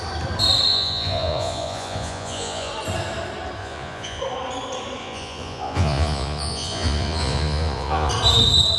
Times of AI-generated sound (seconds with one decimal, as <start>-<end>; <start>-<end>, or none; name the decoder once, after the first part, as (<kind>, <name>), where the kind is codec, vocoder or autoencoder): 0.7-2.7 (vocoder, Vocos); 3.6-4.2; 5.0-8.1